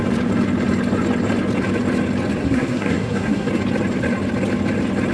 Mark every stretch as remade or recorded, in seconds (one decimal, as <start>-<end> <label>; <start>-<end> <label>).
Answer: 0.0-2.4 recorded; 2.4-3.5 remade; 3.5-5.1 recorded